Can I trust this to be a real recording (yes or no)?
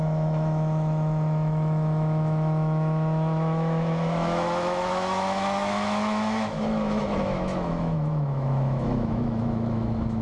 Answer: no